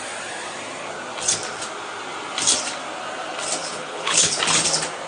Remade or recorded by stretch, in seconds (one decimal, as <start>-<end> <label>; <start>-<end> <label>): 0.0-3.6 recorded; 3.6-4.4 remade; 4.4-5.1 recorded